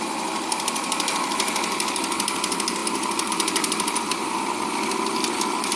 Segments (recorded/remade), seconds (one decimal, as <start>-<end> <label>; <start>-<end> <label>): 0.0-5.8 recorded